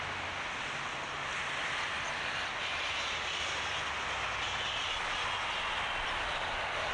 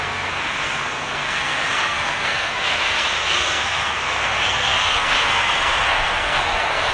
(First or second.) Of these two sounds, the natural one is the first